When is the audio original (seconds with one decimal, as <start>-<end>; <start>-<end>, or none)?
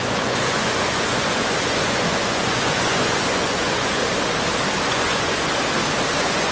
4.0-4.8; 5.5-6.1